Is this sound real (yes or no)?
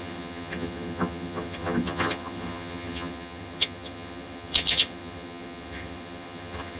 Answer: no